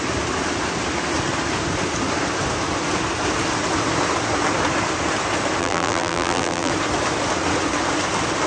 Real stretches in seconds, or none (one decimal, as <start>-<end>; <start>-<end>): 0.0-5.6; 6.7-8.5